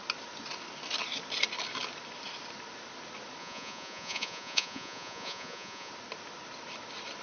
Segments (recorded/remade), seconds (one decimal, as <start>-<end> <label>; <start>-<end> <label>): 0.0-3.4 recorded; 3.4-5.9 remade; 5.9-7.2 recorded